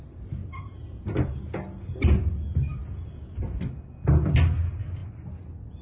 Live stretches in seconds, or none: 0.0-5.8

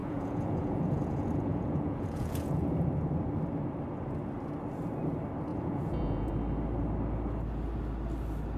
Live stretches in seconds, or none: 2.8-5.5; 6.3-8.6

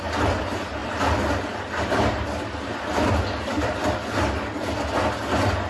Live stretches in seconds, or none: 0.0-5.7

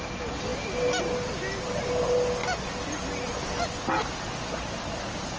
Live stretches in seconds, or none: 0.0-5.4